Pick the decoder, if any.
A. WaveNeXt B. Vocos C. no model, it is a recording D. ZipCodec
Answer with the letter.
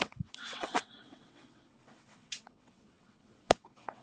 A